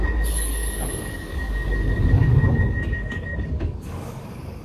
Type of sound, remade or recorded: remade